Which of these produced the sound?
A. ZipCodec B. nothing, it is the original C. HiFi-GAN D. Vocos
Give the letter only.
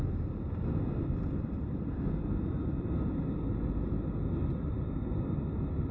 B